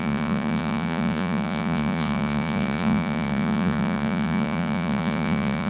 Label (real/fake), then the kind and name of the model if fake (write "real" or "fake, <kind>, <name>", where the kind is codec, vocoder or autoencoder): fake, vocoder, Vocos